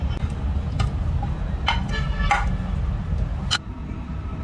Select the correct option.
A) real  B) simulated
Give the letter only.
A